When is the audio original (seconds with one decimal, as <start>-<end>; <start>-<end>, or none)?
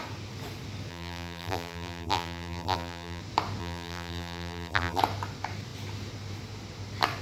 0.0-0.9; 3.2-3.6; 5.0-7.2